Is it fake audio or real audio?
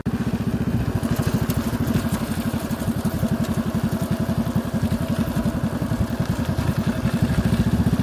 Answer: real